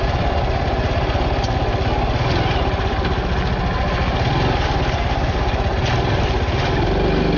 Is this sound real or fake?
real